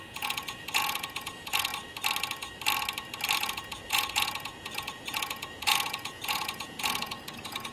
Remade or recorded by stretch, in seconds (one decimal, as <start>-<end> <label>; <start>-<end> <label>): 0.0-1.7 remade; 1.7-3.4 recorded; 3.4-7.7 remade